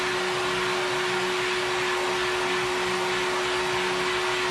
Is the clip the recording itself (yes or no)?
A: yes